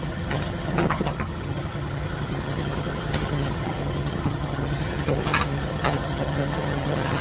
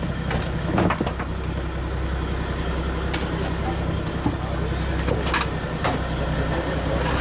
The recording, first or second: second